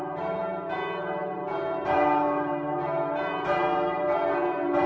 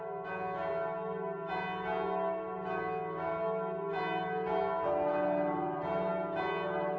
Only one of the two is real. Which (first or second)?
second